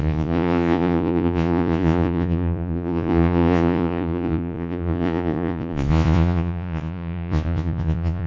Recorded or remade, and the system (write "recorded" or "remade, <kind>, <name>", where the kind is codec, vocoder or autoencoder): remade, vocoder, Vocos